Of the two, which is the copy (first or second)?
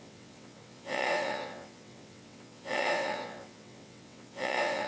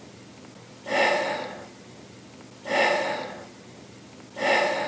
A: first